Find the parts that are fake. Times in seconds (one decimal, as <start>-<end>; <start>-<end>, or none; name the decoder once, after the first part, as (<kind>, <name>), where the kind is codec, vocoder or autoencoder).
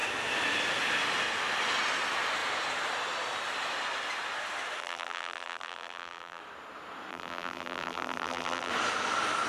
4.8-6.4 (vocoder, BigVGAN v2); 7.1-8.7